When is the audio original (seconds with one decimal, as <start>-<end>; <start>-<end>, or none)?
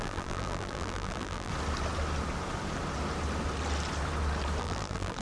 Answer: 1.5-4.6